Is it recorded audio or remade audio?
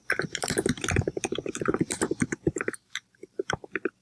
remade